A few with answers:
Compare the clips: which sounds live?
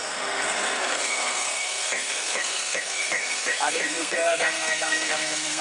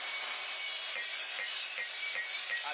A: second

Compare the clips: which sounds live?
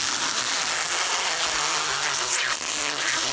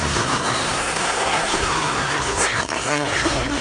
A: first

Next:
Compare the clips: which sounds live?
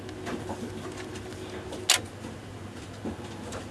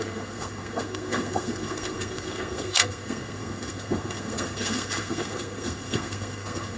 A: first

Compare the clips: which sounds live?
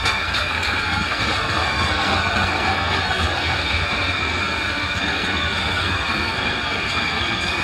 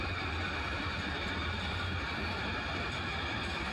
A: second